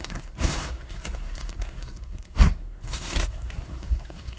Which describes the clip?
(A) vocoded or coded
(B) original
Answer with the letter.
A